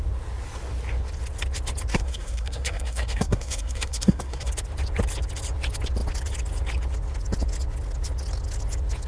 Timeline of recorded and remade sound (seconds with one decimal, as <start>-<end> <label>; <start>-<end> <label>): 0.0-1.9 recorded; 1.9-4.5 remade; 4.5-9.1 recorded